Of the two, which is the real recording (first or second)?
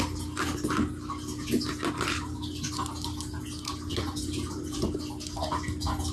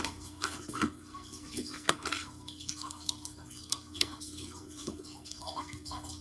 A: first